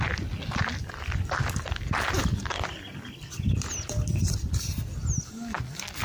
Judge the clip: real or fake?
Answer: real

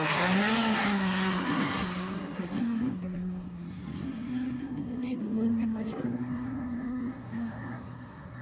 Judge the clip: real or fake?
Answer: fake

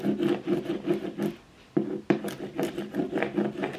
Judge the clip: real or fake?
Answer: real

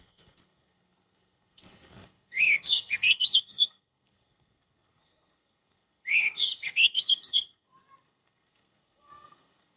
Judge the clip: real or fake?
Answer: fake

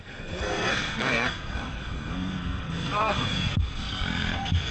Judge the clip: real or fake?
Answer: fake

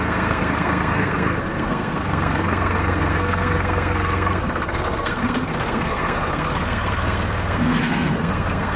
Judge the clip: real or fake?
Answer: fake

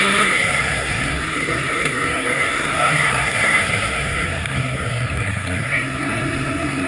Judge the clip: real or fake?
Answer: fake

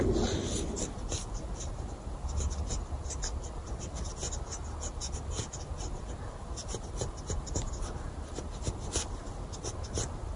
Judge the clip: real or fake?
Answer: real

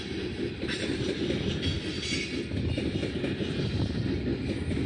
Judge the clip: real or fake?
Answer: real